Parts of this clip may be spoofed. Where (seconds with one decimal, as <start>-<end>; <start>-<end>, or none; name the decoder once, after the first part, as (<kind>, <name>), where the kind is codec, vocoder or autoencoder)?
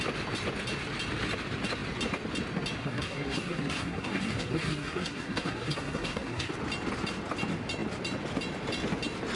2.8-6.5 (codec, SNAC)